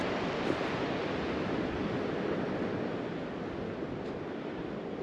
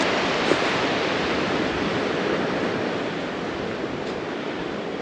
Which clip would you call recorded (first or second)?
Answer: first